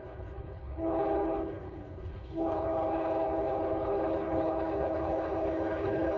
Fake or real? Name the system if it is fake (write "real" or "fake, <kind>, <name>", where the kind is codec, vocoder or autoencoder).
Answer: fake, codec, HILCodec